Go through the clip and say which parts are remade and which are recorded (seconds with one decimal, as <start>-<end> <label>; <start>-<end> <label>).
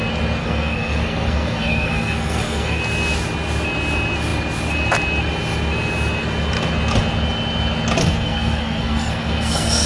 0.0-0.4 recorded; 0.4-2.8 remade; 2.8-8.0 recorded; 8.0-9.9 remade